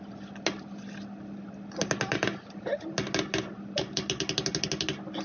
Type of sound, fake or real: real